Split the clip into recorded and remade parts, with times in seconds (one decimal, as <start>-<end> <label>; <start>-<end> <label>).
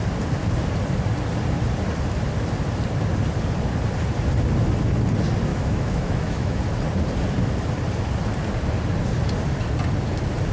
0.0-5.5 recorded; 5.5-6.6 remade; 6.6-10.5 recorded